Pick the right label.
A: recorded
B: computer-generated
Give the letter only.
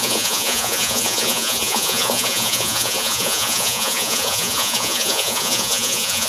B